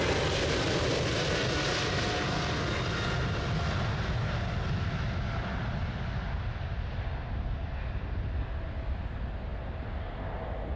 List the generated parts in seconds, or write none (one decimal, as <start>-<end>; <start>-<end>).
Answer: none